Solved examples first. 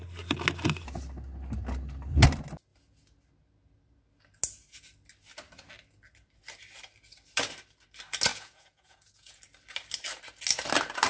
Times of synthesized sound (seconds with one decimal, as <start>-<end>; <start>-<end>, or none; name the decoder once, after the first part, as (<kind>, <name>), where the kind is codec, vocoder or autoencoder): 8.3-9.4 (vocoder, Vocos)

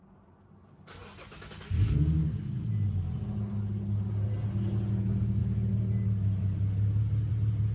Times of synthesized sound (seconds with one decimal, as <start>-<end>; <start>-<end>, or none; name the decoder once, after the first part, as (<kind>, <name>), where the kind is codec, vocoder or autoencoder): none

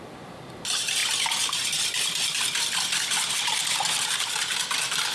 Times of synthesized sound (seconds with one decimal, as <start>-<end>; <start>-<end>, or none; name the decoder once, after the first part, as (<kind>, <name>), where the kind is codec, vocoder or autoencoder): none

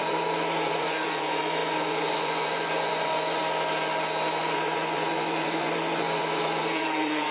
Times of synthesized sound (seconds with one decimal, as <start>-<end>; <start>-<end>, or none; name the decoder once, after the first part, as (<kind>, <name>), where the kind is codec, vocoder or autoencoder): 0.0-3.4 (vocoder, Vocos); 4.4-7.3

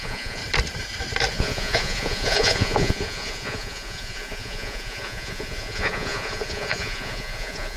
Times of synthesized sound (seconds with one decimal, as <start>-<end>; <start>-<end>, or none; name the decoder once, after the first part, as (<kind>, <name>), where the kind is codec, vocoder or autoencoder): 0.0-0.4 (vocoder, Vocos); 1.3-7.8

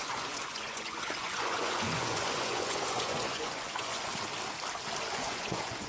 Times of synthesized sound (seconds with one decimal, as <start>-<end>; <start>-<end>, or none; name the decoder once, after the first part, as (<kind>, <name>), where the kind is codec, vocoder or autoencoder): 0.0-4.1 (vocoder, Vocos); 5.1-5.9